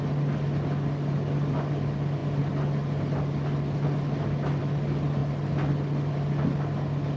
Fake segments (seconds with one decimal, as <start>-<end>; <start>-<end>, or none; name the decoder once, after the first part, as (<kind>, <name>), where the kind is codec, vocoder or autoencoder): none